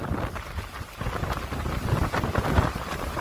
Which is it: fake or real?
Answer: real